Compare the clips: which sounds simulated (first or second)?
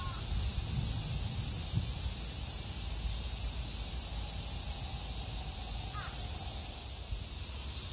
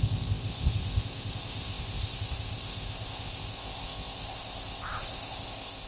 second